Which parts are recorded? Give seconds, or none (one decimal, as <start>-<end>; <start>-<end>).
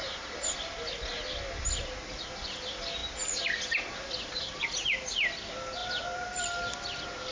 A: 0.0-7.3